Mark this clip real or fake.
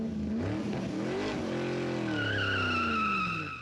real